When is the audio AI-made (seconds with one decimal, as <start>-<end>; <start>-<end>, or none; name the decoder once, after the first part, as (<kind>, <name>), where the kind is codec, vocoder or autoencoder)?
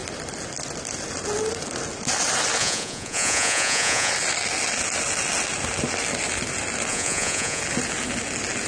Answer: 2.6-4.1 (vocoder, Vocos); 6.9-7.6